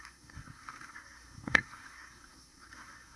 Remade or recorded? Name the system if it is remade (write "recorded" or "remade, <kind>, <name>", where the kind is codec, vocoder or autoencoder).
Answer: remade, codec, SNAC